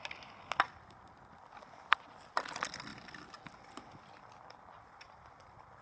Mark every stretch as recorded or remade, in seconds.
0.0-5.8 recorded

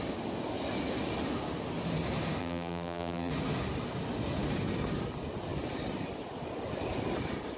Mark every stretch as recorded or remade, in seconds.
0.0-2.4 recorded; 2.4-3.3 remade; 3.3-7.6 recorded

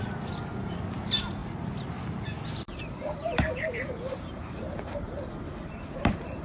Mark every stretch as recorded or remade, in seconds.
0.0-1.4 recorded; 1.4-5.2 remade; 5.2-6.4 recorded

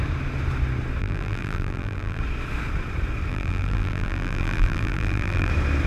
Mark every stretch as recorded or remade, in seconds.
0.0-1.0 recorded; 1.0-2.2 remade; 2.2-3.3 recorded; 3.3-5.5 remade; 5.5-5.9 recorded

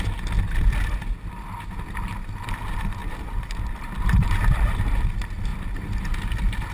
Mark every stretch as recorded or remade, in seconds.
0.0-3.0 recorded; 3.0-5.0 remade; 5.0-5.5 recorded; 5.5-6.7 remade

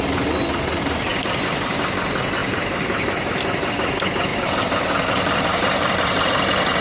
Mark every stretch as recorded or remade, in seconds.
0.0-1.1 recorded; 1.1-1.7 remade; 1.7-2.4 recorded; 2.4-3.7 remade; 3.7-4.3 recorded; 4.3-6.3 remade; 6.3-6.8 recorded